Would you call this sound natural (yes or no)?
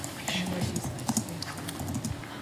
yes